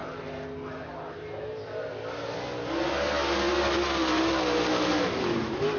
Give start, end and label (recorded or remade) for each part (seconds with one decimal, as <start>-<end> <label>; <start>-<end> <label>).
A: 0.0-5.8 recorded